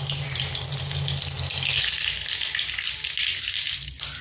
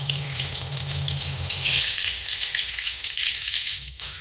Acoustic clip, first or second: first